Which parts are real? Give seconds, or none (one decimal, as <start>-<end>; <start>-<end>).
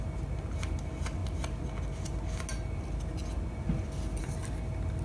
0.0-5.0